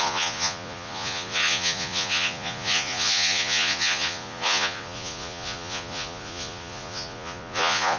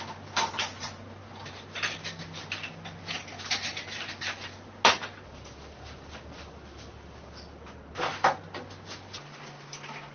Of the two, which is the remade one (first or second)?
first